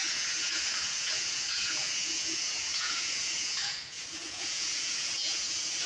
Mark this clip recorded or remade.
remade